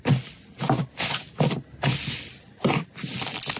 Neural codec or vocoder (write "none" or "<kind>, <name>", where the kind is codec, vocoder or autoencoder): none